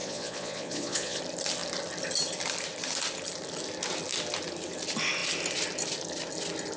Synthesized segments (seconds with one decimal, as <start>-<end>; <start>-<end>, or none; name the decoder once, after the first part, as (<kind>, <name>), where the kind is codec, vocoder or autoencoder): 0.0-1.2 (vocoder, Vocos)